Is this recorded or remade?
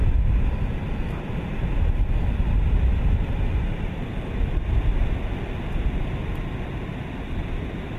recorded